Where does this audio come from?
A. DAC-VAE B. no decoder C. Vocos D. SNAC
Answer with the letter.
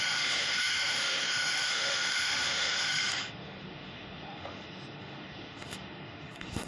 A